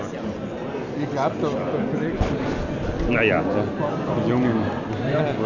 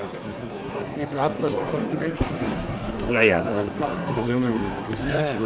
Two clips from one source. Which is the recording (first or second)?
first